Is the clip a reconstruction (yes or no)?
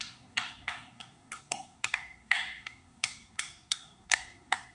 yes